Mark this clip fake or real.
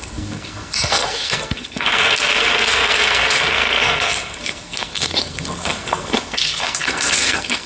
fake